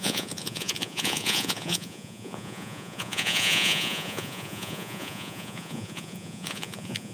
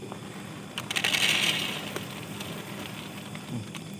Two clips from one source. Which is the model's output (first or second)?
first